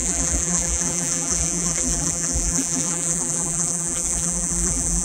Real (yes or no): no